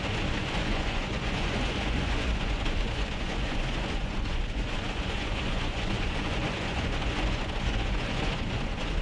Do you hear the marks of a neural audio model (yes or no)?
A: yes